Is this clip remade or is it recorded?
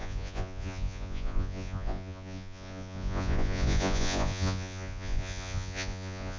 remade